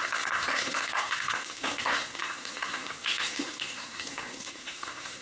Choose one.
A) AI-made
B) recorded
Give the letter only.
A